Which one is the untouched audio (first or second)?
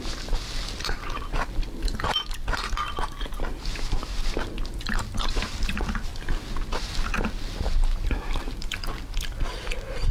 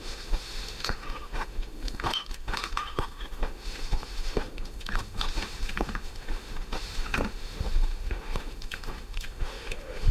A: first